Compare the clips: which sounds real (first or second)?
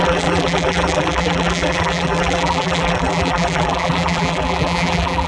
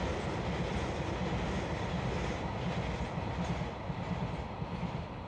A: second